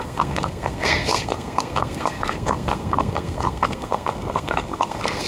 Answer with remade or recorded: remade